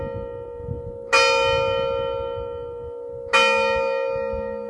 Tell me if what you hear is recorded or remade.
recorded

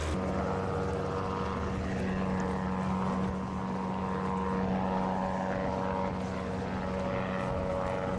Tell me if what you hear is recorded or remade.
recorded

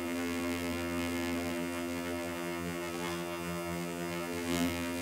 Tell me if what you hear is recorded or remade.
remade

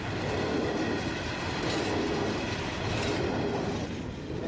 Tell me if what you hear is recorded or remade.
recorded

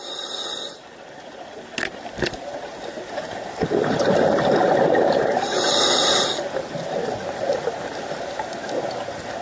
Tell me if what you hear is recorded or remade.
recorded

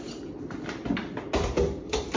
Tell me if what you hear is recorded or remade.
recorded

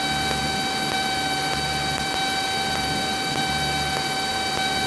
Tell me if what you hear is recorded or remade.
remade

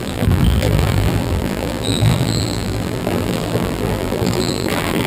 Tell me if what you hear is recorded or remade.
remade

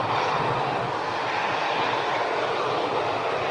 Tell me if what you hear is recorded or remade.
remade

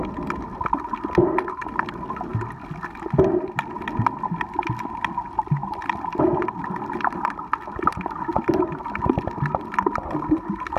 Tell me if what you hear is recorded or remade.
recorded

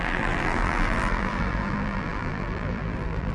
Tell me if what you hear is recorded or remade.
remade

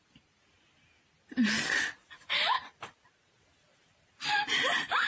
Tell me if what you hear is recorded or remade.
recorded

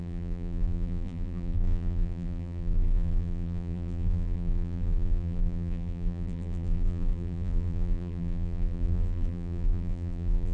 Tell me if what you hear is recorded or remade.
remade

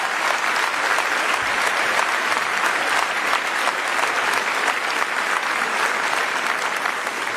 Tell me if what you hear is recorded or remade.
remade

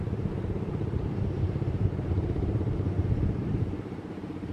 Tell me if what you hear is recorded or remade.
remade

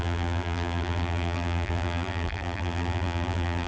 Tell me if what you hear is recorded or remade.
remade